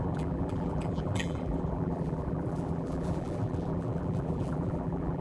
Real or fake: fake